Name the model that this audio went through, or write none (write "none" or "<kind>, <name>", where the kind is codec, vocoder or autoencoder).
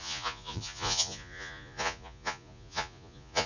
vocoder, Vocos